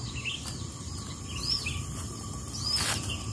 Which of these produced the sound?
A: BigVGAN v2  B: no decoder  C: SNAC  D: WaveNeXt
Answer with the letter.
B